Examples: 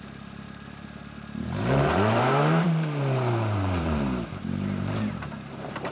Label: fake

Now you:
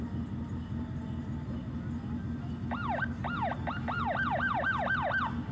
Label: real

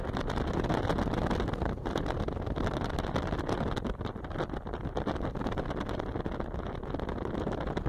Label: real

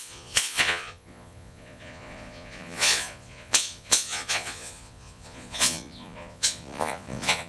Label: fake